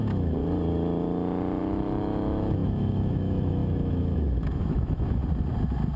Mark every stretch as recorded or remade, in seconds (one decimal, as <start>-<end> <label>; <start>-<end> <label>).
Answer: 0.0-0.4 remade; 0.4-1.6 recorded; 1.6-5.2 remade; 5.2-6.0 recorded